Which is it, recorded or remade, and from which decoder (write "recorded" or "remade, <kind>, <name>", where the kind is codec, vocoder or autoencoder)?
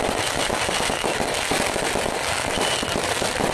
recorded